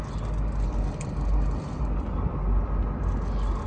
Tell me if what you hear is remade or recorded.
recorded